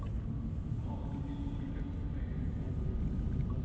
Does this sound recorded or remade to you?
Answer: recorded